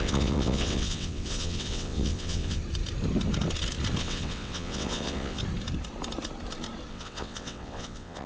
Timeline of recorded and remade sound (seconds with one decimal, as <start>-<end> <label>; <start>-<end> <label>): 0.0-2.6 remade; 2.6-4.0 recorded; 4.0-5.4 remade; 5.4-6.9 recorded; 6.9-8.3 remade